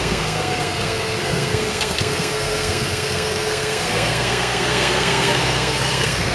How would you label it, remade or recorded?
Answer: remade